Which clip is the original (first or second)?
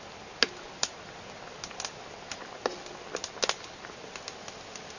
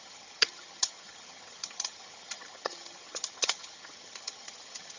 first